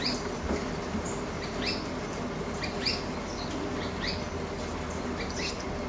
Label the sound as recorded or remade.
recorded